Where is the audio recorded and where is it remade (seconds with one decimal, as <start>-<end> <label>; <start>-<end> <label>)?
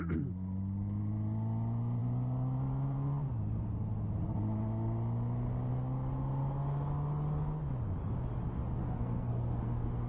0.0-8.8 recorded; 8.8-10.1 remade